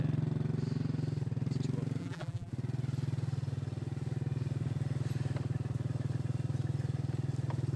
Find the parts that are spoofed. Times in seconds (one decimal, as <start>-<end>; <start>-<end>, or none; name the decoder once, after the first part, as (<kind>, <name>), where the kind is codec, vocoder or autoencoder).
2.0-2.5 (vocoder, BigVGAN v2)